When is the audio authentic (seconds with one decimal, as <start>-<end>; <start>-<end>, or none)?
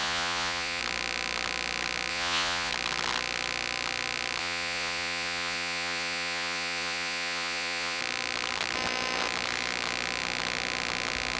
0.8-2.1; 2.7-4.4; 8.0-11.4